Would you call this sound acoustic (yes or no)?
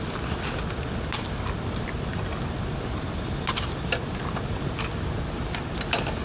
yes